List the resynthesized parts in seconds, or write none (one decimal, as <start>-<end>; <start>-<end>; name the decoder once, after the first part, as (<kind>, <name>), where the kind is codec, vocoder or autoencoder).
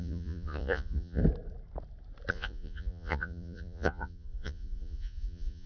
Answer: 0.0-1.2 (vocoder, Vocos); 2.3-5.7